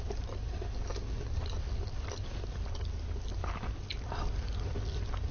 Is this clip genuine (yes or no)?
yes